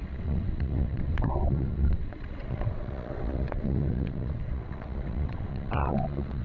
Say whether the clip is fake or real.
fake